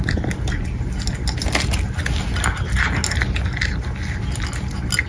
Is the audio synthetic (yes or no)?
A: no